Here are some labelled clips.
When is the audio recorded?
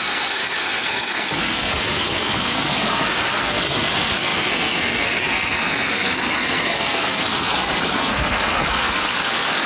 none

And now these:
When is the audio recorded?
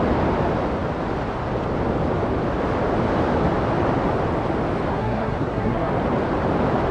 0.0-4.9; 5.9-6.9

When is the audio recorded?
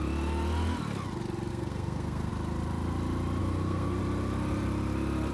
0.0-1.5; 2.3-3.4; 4.0-5.3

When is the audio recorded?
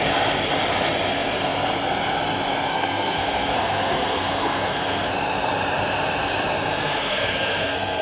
0.0-2.7; 5.1-6.7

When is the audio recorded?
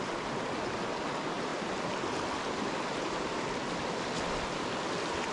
0.0-5.3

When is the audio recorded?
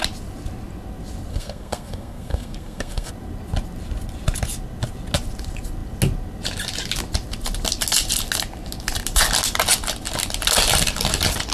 0.0-1.3; 3.1-11.5